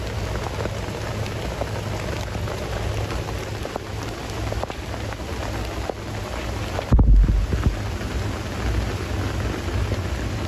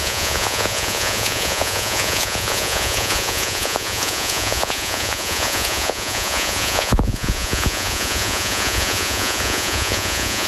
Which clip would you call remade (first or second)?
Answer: second